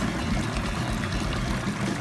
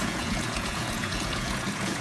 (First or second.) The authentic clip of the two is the first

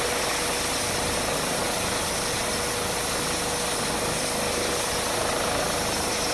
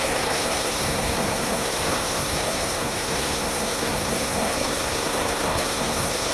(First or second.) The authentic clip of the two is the first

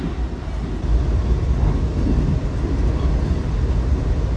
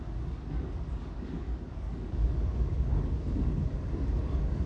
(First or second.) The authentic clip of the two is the first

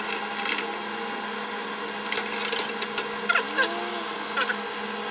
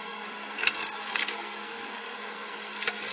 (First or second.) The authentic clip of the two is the first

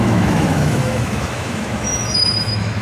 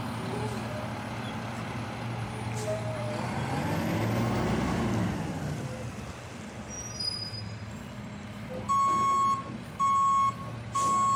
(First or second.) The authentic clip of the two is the second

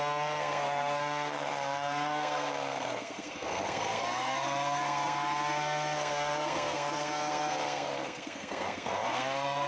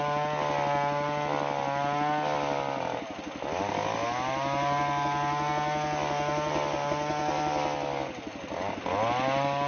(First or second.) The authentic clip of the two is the second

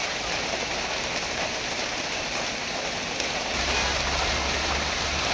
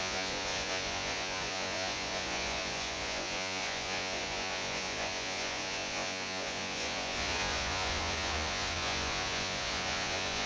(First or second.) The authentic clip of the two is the first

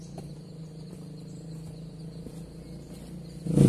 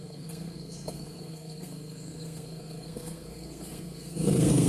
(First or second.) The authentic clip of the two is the first